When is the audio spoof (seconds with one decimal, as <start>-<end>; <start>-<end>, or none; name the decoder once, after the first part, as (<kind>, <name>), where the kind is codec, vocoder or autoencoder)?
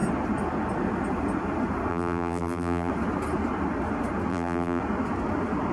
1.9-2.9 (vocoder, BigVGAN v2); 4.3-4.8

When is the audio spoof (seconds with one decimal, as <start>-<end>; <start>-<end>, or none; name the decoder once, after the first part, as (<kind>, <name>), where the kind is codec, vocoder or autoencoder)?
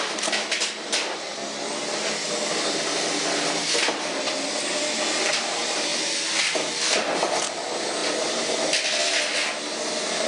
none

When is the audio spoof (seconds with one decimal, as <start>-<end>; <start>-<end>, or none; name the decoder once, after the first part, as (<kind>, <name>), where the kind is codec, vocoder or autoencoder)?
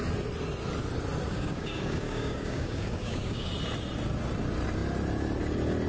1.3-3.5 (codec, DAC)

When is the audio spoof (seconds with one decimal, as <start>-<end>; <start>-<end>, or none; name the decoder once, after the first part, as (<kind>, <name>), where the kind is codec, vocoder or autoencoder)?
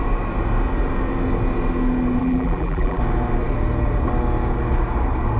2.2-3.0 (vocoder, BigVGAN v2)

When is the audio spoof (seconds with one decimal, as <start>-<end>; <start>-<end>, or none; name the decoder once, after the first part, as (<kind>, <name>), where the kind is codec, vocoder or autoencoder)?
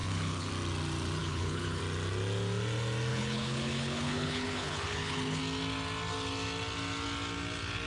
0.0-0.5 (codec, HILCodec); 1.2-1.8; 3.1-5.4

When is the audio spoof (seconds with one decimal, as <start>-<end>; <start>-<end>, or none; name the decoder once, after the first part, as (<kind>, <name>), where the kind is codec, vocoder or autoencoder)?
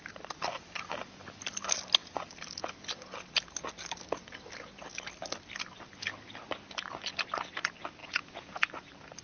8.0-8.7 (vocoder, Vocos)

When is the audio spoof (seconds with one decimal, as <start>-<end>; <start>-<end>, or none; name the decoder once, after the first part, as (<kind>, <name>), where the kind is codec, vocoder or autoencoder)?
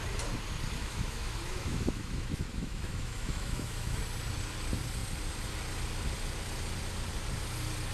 0.8-4.0 (autoencoder, DAC-VAE)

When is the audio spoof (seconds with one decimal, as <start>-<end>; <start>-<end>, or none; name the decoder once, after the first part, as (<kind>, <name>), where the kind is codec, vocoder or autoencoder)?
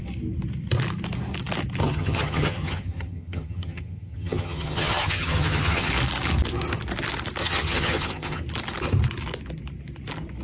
1.8-5.9 (vocoder, HiFi-GAN); 7.4-8.4